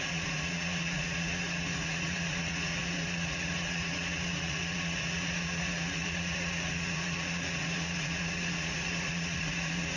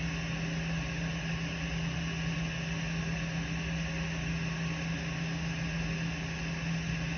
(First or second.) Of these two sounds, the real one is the second